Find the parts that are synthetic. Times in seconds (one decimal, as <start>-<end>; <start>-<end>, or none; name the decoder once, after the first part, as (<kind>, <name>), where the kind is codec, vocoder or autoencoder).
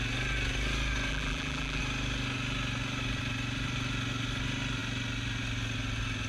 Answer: 1.1-1.8 (vocoder, BigVGAN v2)